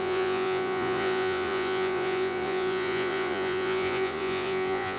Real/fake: fake